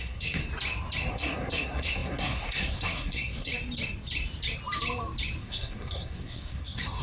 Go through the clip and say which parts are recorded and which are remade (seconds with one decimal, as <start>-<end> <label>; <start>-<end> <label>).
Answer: 0.0-0.4 remade; 0.4-1.1 recorded; 1.1-3.5 remade; 3.5-5.4 recorded; 5.4-7.0 remade